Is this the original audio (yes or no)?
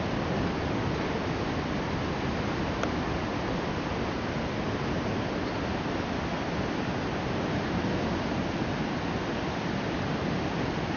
yes